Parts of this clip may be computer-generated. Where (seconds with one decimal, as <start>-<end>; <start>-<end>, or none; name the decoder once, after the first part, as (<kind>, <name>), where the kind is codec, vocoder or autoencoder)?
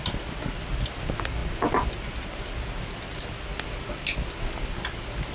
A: none